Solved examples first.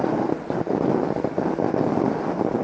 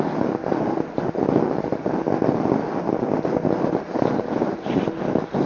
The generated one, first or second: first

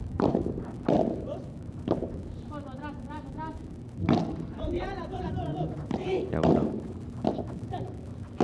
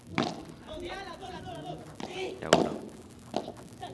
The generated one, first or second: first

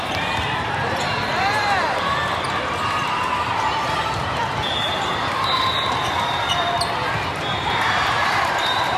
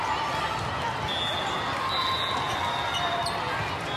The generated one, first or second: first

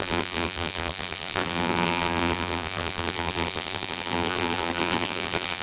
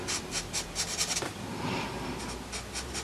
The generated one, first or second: first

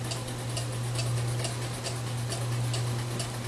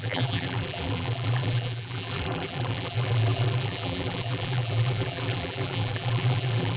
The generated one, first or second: second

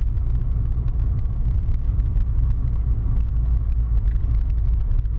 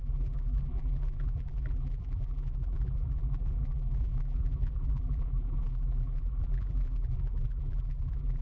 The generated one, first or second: second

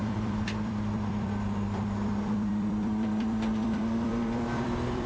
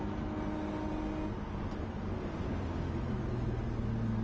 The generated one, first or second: first